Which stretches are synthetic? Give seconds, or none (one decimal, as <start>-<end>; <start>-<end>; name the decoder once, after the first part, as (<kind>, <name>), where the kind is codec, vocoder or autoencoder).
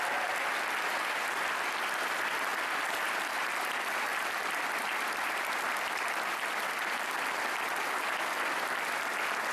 2.5-3.2 (vocoder, BigVGAN v2); 4.1-7.3